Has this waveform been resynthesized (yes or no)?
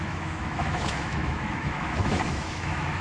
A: yes